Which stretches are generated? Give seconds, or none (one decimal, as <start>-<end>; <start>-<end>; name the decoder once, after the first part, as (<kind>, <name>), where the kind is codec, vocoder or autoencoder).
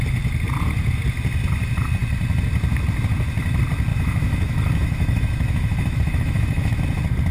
3.9-6.8 (autoencoder, DAC-VAE)